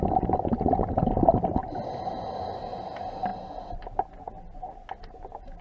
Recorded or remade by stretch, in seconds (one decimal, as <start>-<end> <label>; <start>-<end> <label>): 0.0-5.6 recorded